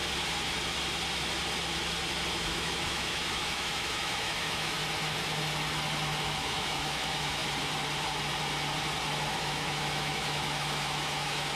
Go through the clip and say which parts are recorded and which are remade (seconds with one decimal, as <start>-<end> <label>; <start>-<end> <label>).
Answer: 0.0-2.4 recorded; 2.4-4.8 remade; 4.8-6.2 recorded; 6.2-7.4 remade; 7.4-9.4 recorded; 9.4-11.6 remade